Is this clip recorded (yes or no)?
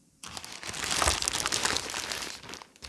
yes